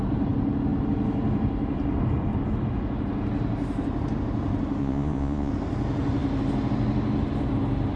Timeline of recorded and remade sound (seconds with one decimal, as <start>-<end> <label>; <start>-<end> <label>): 0.0-4.8 recorded; 4.8-5.5 remade; 5.5-8.0 recorded